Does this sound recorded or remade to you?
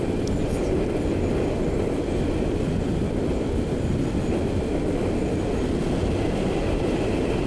recorded